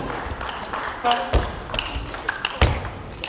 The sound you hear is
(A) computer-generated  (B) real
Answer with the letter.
B